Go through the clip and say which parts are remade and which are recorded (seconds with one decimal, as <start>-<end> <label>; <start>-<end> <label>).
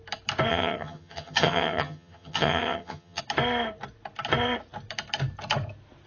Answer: 0.0-0.5 recorded; 0.5-3.2 remade; 3.2-6.1 recorded